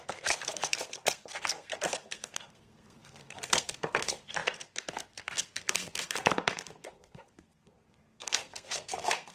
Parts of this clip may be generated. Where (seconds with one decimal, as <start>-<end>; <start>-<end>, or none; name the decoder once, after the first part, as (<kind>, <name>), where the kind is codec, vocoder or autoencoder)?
0.0-9.3 (codec, SNAC)